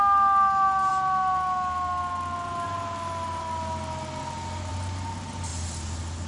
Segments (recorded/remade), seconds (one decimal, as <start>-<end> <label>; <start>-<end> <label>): 0.0-6.3 recorded